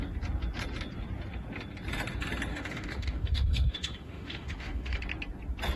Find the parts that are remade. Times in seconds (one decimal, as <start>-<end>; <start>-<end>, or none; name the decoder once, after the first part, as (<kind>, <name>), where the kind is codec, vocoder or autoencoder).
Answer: 2.5-5.0 (autoencoder, DAC-VAE)